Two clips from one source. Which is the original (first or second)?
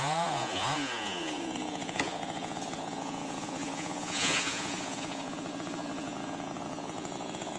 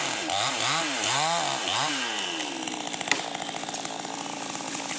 second